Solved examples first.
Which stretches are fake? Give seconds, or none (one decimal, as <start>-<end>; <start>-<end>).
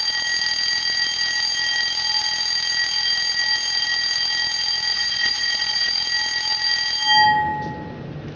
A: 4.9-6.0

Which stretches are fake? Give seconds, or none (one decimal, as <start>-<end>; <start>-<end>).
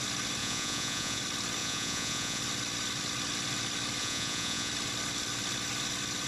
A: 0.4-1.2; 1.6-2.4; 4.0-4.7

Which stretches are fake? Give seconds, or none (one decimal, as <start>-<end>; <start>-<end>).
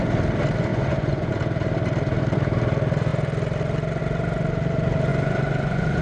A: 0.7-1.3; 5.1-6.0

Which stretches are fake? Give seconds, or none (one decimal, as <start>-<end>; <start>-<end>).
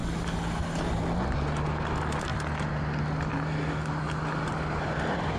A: none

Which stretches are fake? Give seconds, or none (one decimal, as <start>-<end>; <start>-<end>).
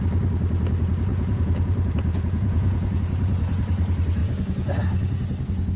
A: 1.1-3.0; 4.2-4.8